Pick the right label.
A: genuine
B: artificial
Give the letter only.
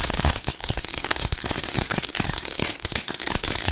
B